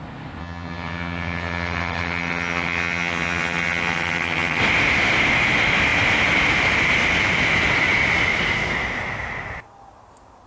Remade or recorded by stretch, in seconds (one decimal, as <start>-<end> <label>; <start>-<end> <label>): 0.0-0.4 recorded; 0.4-4.6 remade; 4.6-10.5 recorded